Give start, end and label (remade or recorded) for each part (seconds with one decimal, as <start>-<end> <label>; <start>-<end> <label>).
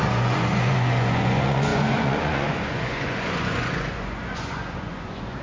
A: 0.0-5.4 remade